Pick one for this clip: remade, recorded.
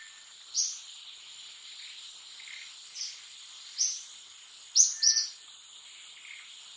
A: recorded